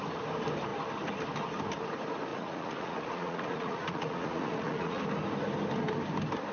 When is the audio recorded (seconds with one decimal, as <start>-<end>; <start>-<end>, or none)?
0.0-2.3; 5.0-6.5